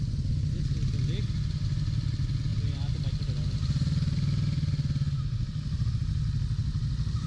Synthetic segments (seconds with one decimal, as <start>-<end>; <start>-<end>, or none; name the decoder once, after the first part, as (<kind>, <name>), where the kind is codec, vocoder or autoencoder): 2.5-3.1 (vocoder, BigVGAN v2)